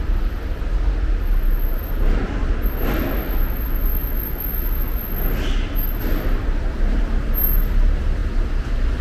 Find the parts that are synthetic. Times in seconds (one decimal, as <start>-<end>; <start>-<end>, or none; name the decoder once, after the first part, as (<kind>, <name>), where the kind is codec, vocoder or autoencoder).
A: 0.0-0.6 (vocoder, BigVGAN v2)